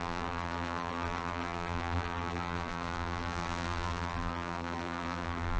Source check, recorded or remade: remade